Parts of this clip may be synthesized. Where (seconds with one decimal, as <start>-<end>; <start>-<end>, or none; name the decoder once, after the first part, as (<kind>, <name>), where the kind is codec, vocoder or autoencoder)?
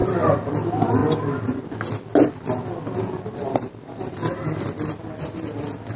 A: 0.0-0.5 (vocoder, BigVGAN v2); 3.3-4.1